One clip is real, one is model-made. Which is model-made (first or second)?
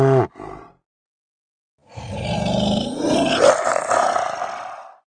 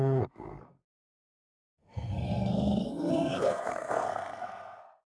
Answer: second